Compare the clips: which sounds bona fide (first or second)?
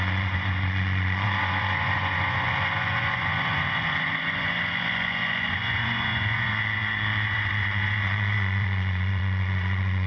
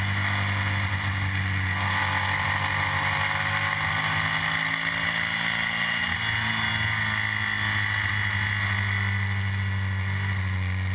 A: second